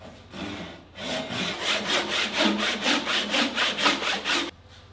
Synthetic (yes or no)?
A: no